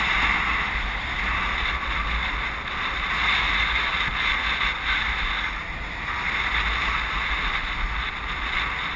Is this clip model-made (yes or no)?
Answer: no